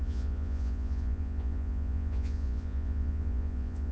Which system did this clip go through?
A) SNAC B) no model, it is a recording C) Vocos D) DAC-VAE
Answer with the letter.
C